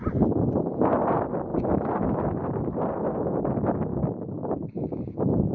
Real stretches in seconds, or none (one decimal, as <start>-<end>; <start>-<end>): 0.0-3.9